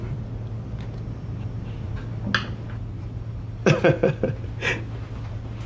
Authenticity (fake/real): real